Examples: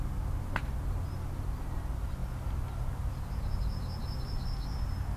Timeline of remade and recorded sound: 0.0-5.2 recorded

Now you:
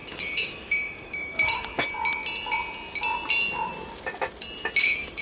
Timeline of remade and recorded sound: 0.0-1.7 remade; 1.7-4.8 recorded; 4.8-5.2 remade

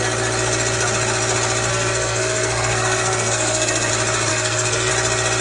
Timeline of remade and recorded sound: 0.0-1.7 recorded; 1.7-3.9 remade; 3.9-4.3 recorded; 4.3-4.9 remade; 4.9-5.4 recorded